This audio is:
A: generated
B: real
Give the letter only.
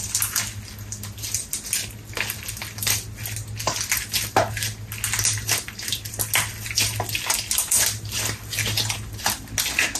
B